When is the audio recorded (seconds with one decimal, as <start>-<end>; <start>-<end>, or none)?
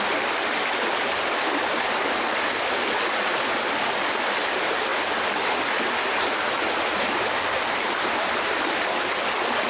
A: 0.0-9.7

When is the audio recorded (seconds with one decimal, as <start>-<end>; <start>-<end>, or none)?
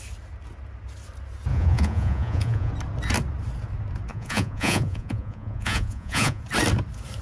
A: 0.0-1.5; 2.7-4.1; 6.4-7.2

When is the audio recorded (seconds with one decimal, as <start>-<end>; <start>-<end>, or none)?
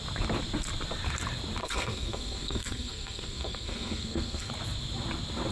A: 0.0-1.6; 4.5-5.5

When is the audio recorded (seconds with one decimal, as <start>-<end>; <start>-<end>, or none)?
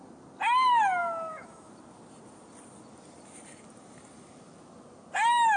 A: 0.0-1.0; 1.7-5.6